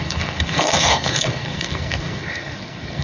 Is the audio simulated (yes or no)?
yes